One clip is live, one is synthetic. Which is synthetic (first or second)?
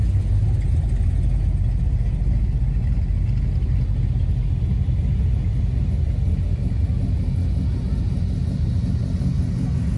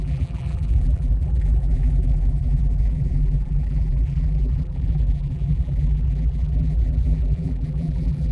second